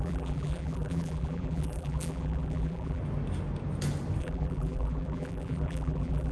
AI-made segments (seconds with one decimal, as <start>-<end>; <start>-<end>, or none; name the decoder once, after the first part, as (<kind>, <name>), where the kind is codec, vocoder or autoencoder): 0.0-3.0 (vocoder, BigVGAN v2); 4.2-6.3